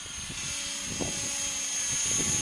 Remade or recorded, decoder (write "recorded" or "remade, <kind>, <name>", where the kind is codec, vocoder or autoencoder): recorded